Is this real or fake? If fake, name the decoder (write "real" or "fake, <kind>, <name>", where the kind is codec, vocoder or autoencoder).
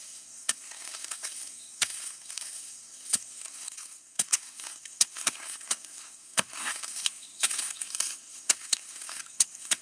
fake, codec, SNAC